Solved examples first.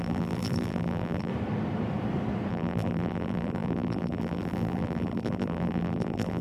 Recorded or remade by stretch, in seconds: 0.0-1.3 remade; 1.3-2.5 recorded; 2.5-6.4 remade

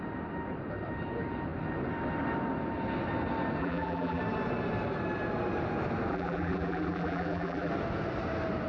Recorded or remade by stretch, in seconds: 0.0-3.6 recorded; 3.6-4.2 remade; 4.2-6.1 recorded; 6.1-7.7 remade; 7.7-8.7 recorded

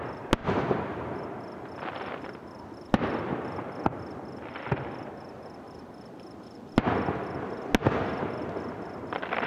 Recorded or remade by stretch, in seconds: 0.0-0.4 recorded; 0.4-1.2 remade; 1.2-9.5 recorded

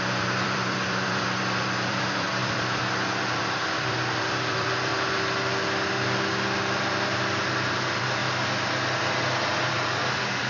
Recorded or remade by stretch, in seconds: 0.0-4.9 remade; 4.9-6.6 recorded; 6.6-8.2 remade; 8.2-9.7 recorded; 9.7-10.5 remade

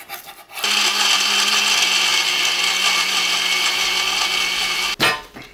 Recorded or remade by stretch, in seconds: 0.0-5.5 recorded

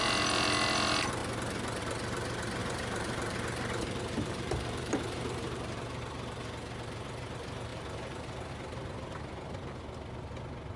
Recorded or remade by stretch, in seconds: 0.0-2.6 recorded; 2.6-6.0 remade; 6.0-7.7 recorded; 7.7-8.5 remade; 8.5-10.8 recorded

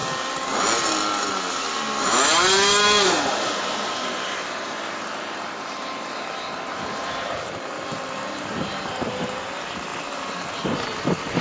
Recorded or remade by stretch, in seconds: 0.0-2.0 recorded; 2.0-11.4 remade

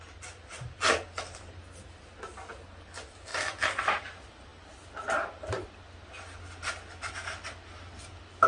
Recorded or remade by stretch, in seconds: 0.0-8.5 recorded